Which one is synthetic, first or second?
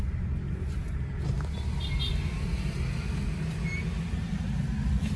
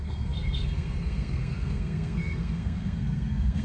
second